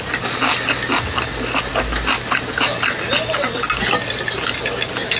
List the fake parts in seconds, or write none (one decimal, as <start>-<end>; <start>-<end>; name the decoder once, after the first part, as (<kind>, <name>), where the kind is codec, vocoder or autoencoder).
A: none